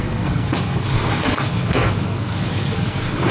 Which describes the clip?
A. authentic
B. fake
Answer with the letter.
B